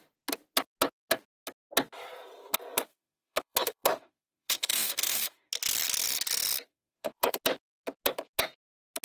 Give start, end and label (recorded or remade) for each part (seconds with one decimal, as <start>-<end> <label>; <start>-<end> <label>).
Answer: 0.0-2.9 recorded; 2.9-5.5 remade; 5.5-6.7 recorded; 6.7-7.4 remade; 7.4-9.0 recorded